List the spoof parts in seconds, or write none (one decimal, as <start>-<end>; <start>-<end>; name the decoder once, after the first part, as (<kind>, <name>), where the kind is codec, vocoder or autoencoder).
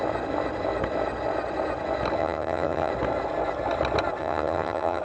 2.2-2.9 (vocoder, HiFi-GAN); 4.2-5.0